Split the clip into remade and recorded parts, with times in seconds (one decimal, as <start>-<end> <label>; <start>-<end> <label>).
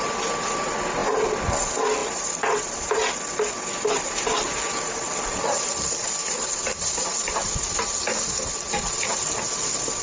0.0-10.0 recorded